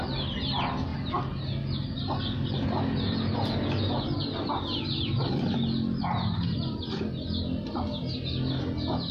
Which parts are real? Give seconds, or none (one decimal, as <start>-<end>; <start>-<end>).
0.0-9.1